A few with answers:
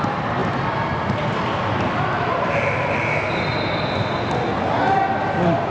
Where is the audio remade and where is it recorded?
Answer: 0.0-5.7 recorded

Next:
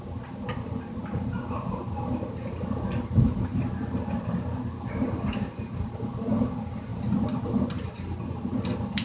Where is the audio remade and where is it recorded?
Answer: 0.0-9.0 recorded

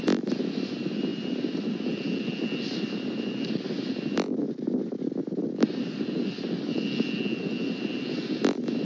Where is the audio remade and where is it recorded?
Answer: 0.0-8.8 recorded

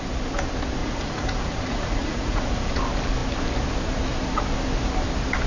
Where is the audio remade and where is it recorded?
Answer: 0.0-0.8 recorded; 0.8-2.8 remade; 2.8-5.5 recorded

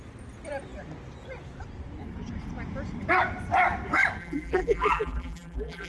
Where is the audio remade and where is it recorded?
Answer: 0.0-4.2 recorded; 4.2-5.9 remade

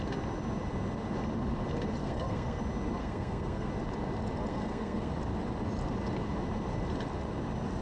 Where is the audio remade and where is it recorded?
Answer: 0.0-2.0 recorded; 2.0-2.6 remade; 2.6-3.0 recorded; 3.0-3.7 remade; 3.7-4.5 recorded; 4.5-5.1 remade; 5.1-7.8 recorded

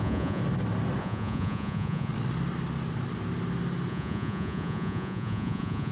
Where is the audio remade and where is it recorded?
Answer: 0.0-0.4 remade; 0.4-1.0 recorded; 1.0-2.1 remade; 2.1-3.9 recorded; 3.9-5.9 remade

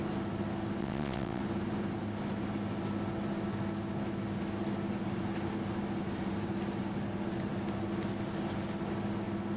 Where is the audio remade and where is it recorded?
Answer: 0.0-0.8 recorded; 0.8-1.4 remade; 1.4-9.6 recorded